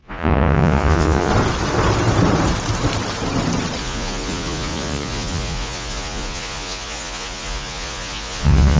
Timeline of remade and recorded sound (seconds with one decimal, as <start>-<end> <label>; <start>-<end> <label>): 0.0-1.3 remade; 1.3-3.8 recorded; 3.8-8.8 remade